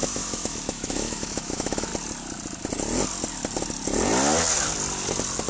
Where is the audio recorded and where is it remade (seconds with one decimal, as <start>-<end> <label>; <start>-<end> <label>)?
0.0-1.9 remade; 1.9-5.5 recorded